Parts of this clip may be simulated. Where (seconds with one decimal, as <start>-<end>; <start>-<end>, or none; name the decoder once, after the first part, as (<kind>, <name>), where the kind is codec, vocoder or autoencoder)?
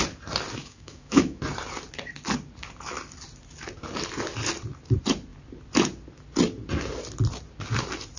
0.6-1.4 (autoencoder, DAC-VAE)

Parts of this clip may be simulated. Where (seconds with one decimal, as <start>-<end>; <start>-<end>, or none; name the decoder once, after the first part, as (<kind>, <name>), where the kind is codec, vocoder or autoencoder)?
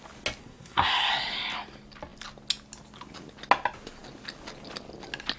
0.4-1.1 (codec, SNAC)